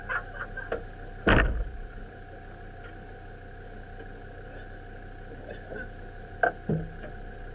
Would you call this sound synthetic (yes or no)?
no